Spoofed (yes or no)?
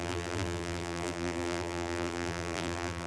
yes